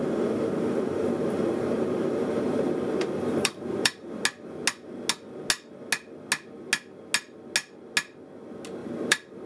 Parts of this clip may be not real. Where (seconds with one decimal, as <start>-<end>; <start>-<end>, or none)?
0.0-4.2; 8.8-9.5